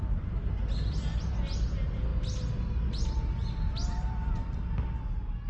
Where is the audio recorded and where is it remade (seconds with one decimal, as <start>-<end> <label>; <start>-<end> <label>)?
0.0-0.6 recorded; 0.6-1.3 remade; 1.3-5.5 recorded